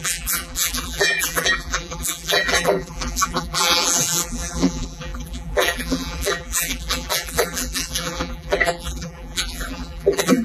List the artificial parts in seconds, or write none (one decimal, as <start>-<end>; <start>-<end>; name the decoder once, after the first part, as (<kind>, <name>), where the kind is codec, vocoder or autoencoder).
0.0-10.4 (vocoder, BigVGAN v2)